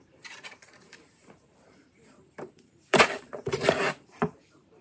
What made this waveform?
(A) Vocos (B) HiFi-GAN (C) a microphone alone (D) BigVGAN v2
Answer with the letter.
D